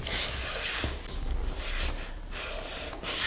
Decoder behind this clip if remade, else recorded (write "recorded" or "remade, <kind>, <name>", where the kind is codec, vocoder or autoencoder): recorded